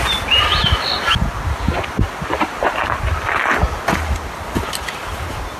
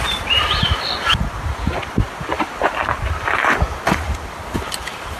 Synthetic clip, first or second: second